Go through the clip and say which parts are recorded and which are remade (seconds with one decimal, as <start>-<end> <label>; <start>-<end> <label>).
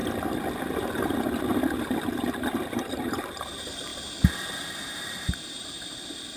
0.0-1.6 recorded; 1.6-3.9 remade; 3.9-4.8 recorded; 4.8-6.4 remade